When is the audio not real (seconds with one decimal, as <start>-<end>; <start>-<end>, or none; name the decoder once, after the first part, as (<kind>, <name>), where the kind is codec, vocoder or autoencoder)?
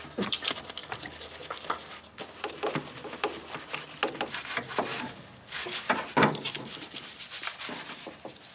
0.8-2.2 (codec, DAC); 4.9-5.9